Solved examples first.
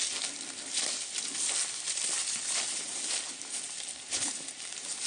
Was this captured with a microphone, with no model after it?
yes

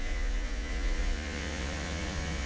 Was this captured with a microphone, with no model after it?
no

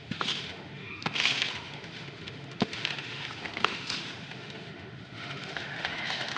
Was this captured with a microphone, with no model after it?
no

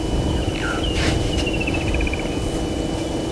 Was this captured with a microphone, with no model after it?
yes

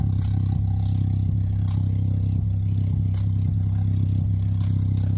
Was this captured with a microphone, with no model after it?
yes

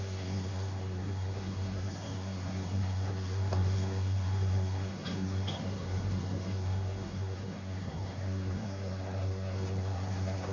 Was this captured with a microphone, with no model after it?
no